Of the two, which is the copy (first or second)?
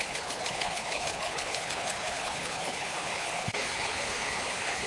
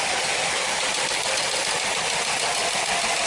first